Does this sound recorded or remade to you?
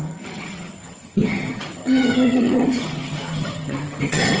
remade